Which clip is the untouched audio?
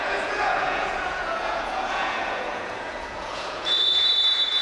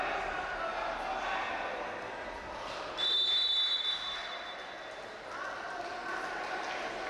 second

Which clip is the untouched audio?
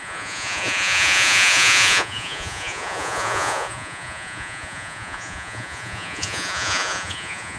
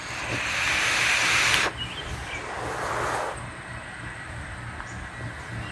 second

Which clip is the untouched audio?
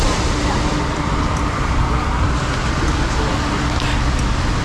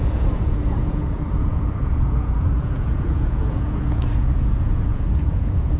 first